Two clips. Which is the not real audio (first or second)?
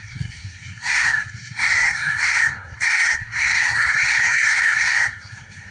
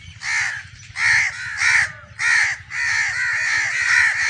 first